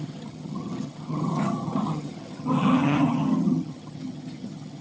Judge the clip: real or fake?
fake